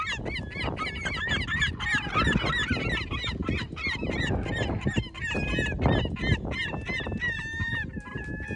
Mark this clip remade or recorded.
recorded